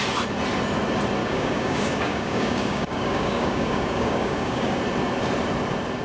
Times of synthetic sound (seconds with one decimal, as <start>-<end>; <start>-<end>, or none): 1.2-4.8